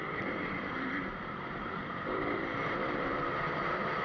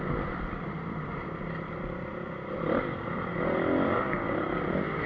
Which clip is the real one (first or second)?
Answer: second